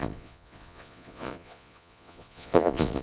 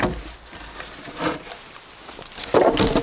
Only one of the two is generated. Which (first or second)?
first